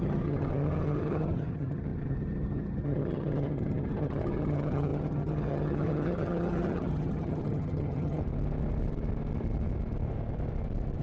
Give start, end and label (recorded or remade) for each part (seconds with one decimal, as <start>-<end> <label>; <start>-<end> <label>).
0.0-8.2 remade; 8.2-11.0 recorded